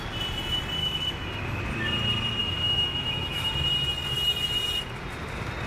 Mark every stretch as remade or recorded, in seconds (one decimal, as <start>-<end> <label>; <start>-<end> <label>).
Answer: 0.0-0.8 recorded; 0.8-1.6 remade; 1.6-2.4 recorded; 2.4-3.5 remade; 3.5-5.7 recorded